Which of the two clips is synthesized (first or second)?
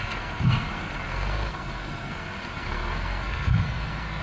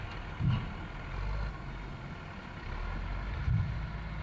first